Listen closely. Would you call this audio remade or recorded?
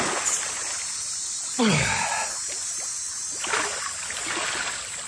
recorded